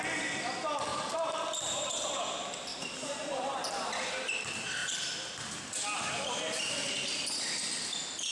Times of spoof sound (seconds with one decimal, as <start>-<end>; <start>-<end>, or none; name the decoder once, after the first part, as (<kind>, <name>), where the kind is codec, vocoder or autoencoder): 0.9-1.9 (vocoder, BigVGAN v2); 2.7-3.9